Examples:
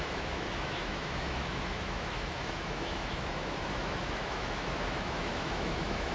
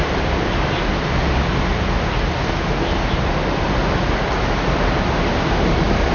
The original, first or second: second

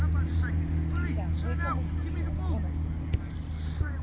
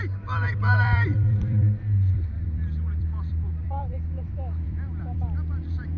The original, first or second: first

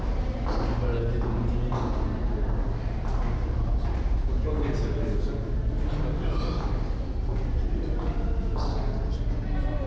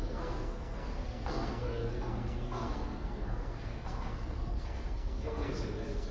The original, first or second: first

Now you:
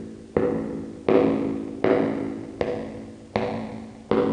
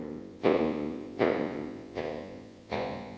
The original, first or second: first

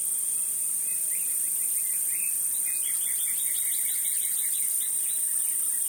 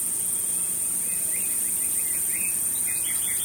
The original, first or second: first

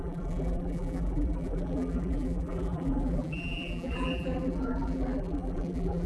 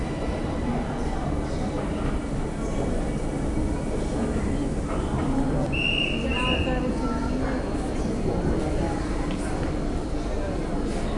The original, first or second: second